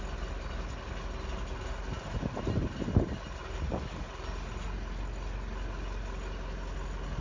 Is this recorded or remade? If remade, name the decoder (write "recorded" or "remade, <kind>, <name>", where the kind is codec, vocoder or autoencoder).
recorded